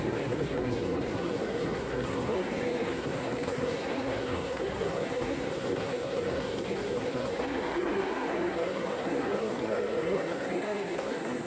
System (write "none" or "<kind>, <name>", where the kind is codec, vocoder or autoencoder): codec, SNAC